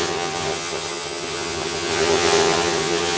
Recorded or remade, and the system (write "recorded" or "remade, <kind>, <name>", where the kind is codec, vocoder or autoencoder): remade, vocoder, HiFi-GAN